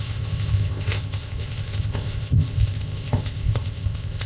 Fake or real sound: fake